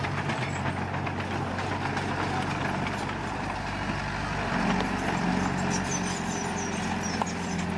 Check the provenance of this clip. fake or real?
real